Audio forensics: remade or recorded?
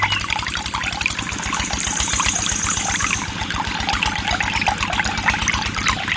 recorded